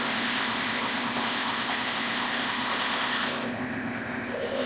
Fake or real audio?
fake